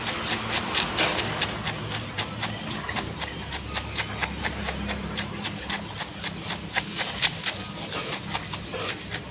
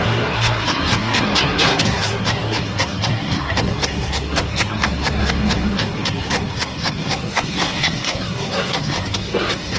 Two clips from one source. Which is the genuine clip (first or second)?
first